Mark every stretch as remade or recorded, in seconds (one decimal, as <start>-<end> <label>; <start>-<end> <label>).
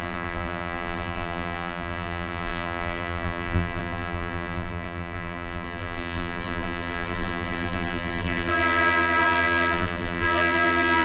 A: 0.0-11.0 remade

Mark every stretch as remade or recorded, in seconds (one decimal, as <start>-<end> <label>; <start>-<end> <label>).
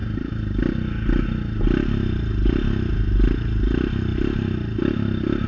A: 0.0-5.5 recorded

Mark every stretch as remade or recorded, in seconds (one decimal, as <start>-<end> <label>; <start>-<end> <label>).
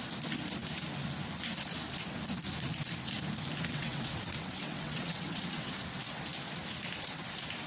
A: 0.0-3.7 recorded; 3.7-6.2 remade; 6.2-7.7 recorded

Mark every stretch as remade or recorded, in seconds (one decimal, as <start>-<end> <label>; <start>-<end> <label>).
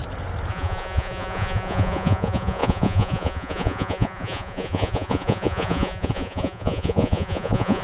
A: 0.0-0.5 recorded; 0.5-7.8 remade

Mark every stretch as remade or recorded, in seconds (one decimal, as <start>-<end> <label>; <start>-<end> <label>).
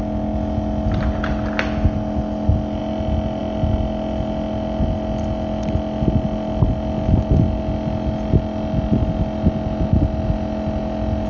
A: 0.0-11.3 recorded